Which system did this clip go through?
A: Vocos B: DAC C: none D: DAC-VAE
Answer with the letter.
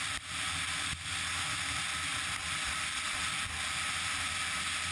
C